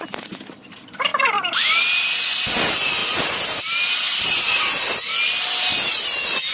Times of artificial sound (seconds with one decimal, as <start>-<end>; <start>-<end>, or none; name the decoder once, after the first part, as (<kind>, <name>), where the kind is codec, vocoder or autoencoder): 1.1-1.8 (vocoder, BigVGAN v2); 3.0-4.9